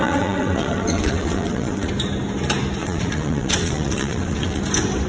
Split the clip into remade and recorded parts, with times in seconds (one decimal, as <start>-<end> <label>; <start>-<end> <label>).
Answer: 0.0-1.9 remade; 1.9-2.8 recorded; 2.8-4.6 remade; 4.6-5.1 recorded